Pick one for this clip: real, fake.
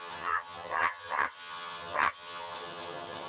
fake